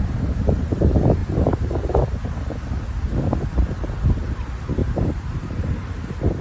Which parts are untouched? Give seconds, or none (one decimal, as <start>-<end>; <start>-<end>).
0.0-1.2; 2.8-4.8; 5.4-6.4